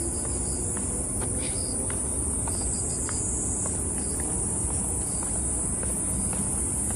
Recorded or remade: recorded